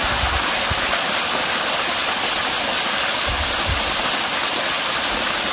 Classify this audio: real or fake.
real